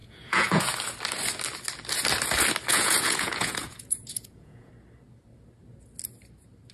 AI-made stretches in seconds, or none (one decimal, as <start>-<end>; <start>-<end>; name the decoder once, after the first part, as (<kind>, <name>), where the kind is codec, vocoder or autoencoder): 0.0-0.6 (vocoder, Vocos); 2.7-4.7

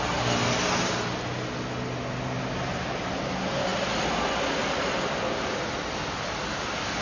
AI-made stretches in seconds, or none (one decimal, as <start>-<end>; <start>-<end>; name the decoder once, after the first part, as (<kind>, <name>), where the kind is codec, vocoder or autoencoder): none